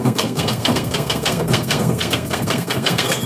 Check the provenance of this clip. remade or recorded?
remade